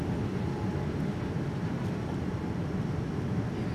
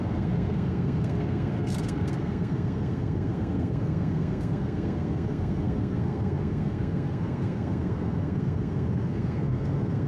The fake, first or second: second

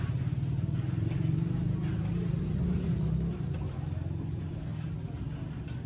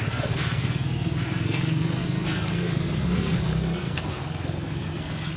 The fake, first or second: second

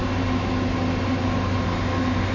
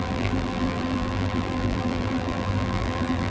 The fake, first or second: second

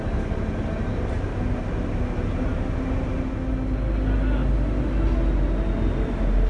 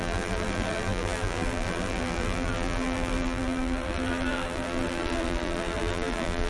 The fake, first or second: second